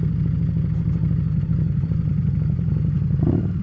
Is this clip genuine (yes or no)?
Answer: yes